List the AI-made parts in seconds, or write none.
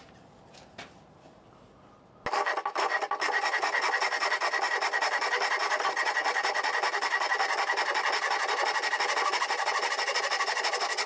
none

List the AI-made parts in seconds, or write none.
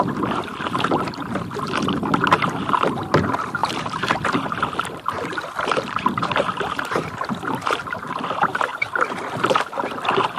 3.6-8.1 (vocoder, BigVGAN v2); 8.7-9.4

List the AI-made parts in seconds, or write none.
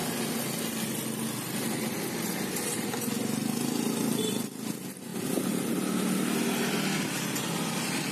none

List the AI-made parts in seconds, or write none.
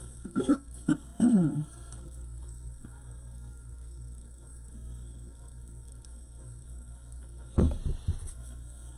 0.0-7.8 (codec, SNAC); 8.3-9.0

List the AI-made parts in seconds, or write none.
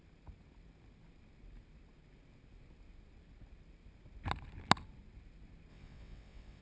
5.7-6.6 (vocoder, WaveNeXt)